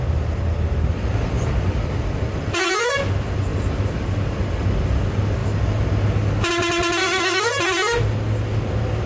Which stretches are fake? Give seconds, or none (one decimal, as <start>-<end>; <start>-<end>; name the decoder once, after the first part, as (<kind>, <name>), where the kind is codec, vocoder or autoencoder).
7.0-7.5 (codec, SNAC)